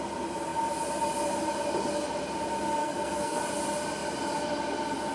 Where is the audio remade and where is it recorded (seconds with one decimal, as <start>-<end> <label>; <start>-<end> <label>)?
0.0-2.8 recorded; 2.8-3.4 remade; 3.4-5.1 recorded